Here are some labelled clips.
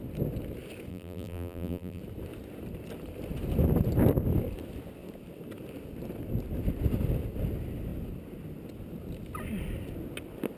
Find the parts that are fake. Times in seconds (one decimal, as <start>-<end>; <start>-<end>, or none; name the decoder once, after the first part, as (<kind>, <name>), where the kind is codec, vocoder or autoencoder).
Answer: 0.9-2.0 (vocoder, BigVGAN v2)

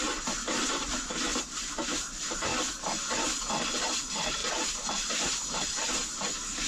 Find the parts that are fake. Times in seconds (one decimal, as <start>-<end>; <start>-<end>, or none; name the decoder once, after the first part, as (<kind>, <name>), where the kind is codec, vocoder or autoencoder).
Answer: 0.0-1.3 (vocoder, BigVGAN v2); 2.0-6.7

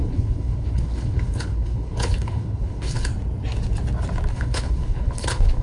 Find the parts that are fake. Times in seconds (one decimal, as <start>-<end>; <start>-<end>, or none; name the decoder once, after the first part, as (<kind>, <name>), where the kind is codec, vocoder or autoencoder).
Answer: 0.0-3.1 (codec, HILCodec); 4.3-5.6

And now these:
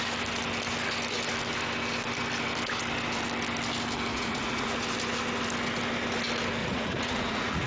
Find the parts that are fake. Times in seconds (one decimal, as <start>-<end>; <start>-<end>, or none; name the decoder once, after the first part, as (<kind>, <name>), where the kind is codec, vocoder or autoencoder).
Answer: 4.1-4.7 (vocoder, Vocos); 6.6-7.7

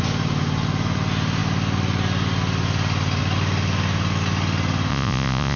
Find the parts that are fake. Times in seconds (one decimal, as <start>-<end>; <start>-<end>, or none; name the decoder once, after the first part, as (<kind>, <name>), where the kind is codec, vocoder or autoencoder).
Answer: 4.9-5.6 (vocoder, Vocos)